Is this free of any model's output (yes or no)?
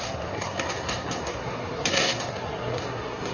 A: no